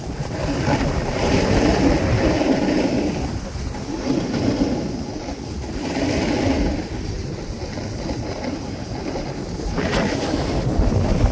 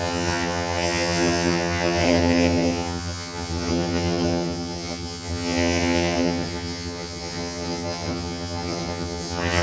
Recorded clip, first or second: first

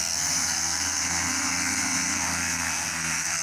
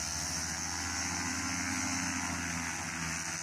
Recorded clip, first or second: second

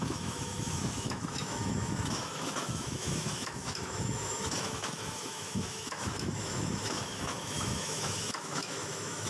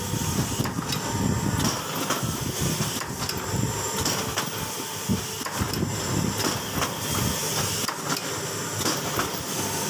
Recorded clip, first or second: second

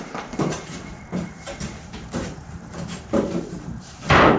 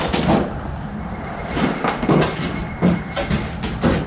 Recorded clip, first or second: second